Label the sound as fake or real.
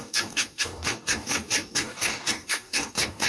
fake